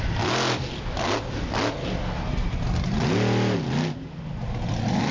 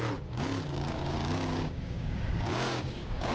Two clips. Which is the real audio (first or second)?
first